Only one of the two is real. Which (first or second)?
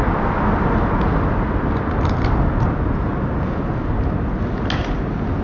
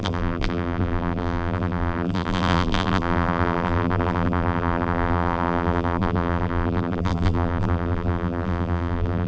first